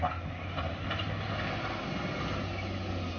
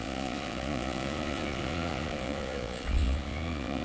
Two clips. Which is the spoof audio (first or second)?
second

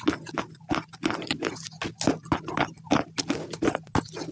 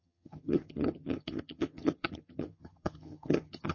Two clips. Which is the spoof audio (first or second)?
second